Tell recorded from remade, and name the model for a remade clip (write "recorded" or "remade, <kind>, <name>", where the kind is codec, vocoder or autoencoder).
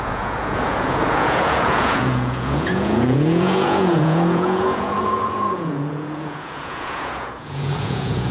remade, vocoder, Vocos